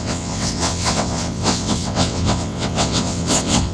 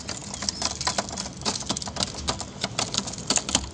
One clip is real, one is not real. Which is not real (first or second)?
first